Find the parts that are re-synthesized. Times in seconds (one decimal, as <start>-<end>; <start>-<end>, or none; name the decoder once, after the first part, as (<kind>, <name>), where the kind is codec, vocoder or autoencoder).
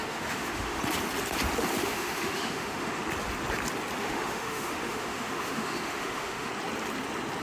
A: 0.0-0.8 (autoencoder, DAC-VAE); 1.8-3.0; 4.0-6.5